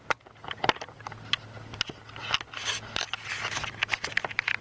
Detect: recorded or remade recorded